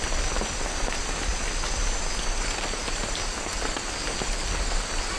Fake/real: real